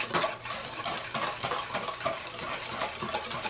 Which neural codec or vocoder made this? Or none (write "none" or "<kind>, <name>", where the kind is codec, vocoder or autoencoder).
none